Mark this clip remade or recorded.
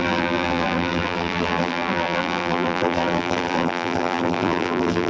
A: remade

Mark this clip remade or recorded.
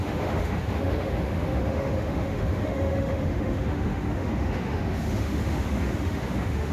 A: remade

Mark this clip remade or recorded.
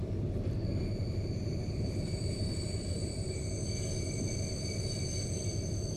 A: recorded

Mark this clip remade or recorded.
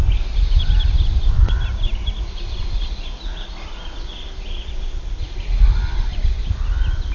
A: recorded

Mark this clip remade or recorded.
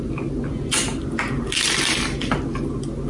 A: recorded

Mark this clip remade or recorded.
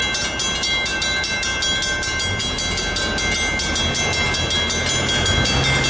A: recorded